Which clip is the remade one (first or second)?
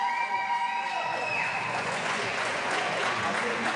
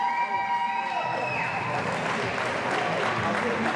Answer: first